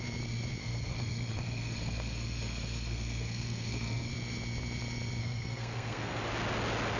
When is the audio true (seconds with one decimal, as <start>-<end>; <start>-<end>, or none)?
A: 0.0-0.6; 4.1-5.2; 6.2-7.0